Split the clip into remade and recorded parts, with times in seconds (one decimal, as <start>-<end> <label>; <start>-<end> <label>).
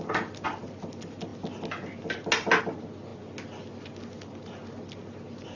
0.0-5.6 recorded